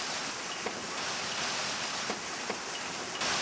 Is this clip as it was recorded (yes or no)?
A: yes